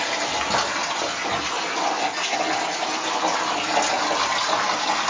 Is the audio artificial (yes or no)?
no